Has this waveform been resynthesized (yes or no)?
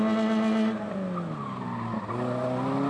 no